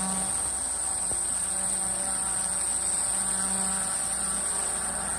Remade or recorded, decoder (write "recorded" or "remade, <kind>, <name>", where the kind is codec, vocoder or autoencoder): recorded